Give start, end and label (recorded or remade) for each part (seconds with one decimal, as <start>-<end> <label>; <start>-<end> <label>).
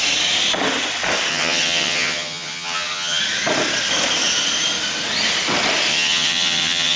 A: 0.0-1.3 recorded; 1.3-3.2 remade; 3.2-5.9 recorded; 5.9-7.0 remade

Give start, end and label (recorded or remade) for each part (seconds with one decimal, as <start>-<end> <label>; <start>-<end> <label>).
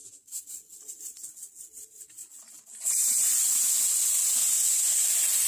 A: 0.0-2.2 recorded; 2.2-3.7 remade; 3.7-5.5 recorded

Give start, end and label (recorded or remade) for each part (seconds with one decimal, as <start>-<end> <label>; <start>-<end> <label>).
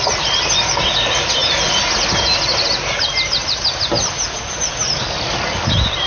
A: 0.0-6.1 recorded